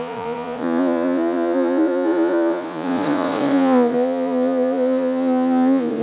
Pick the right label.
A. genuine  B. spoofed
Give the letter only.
B